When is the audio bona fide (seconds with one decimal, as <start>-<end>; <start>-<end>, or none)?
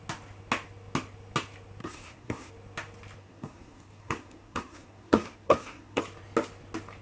0.0-1.8; 2.5-3.2; 6.0-7.0